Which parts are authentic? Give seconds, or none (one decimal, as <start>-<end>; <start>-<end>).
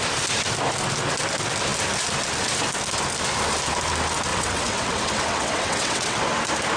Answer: 0.0-4.3; 6.2-6.8